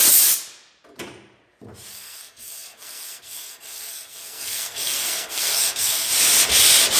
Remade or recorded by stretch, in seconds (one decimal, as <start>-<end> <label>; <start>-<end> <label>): 0.0-1.9 recorded; 1.9-6.1 remade; 6.1-7.0 recorded